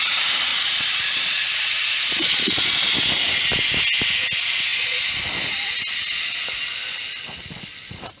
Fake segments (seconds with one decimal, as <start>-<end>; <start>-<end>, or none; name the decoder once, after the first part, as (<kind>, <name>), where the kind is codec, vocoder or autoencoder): 0.5-2.9 (vocoder, Vocos)